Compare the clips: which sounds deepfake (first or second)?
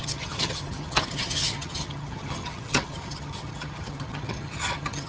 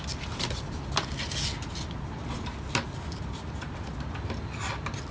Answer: first